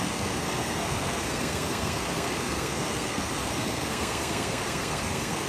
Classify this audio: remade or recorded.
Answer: remade